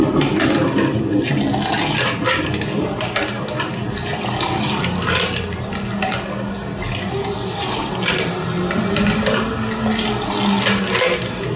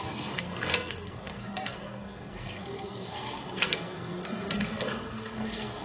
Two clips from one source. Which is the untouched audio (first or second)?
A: first